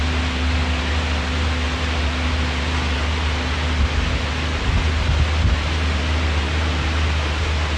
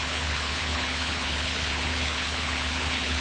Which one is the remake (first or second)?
second